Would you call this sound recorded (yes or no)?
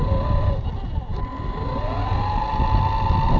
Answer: yes